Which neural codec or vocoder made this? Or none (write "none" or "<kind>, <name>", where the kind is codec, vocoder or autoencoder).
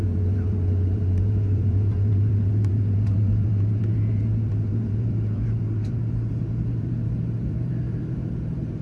vocoder, BigVGAN v2